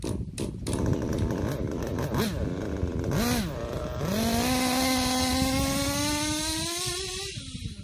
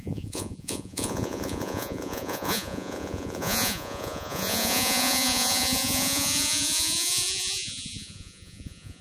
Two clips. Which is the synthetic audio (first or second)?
second